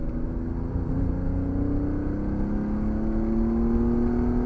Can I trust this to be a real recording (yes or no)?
yes